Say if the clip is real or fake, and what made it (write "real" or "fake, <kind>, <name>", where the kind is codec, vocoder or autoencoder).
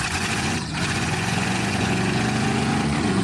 fake, vocoder, Vocos